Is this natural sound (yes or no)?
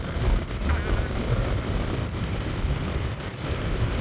yes